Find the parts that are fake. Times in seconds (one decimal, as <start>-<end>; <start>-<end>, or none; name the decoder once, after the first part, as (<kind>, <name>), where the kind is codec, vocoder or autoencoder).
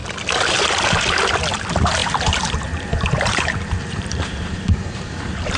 2.0-5.6 (vocoder, BigVGAN v2)